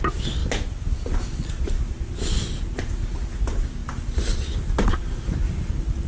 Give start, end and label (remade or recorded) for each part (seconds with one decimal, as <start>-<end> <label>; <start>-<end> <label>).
0.0-6.1 recorded